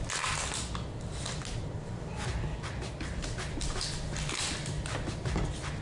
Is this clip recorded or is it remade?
recorded